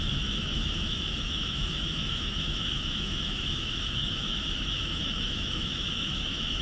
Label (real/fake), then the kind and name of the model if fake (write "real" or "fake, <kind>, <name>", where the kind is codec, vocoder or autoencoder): fake, autoencoder, DAC-VAE